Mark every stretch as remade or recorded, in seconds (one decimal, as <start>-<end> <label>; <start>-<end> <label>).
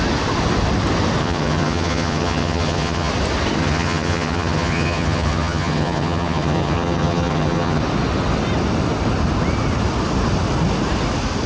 0.0-1.2 recorded; 1.2-3.1 remade; 3.1-3.6 recorded; 3.6-7.8 remade; 7.8-11.5 recorded